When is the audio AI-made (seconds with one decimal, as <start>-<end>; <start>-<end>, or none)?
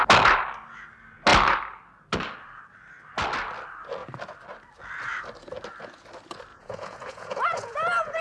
6.5-8.2